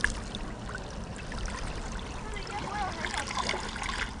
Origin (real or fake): real